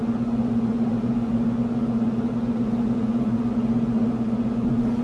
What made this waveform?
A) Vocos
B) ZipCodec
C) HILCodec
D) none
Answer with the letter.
A